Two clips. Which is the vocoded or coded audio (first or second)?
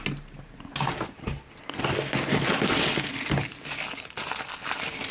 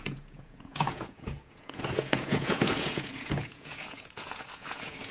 second